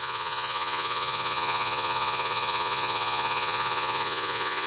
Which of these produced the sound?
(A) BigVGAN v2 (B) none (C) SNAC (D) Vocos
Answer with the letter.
D